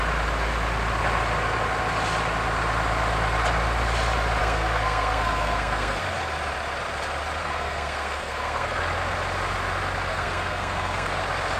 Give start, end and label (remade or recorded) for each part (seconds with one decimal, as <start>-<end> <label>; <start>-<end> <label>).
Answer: 0.0-4.4 recorded; 4.4-6.0 remade; 6.0-7.4 recorded; 7.4-8.8 remade; 8.8-10.1 recorded; 10.1-11.2 remade; 11.2-11.6 recorded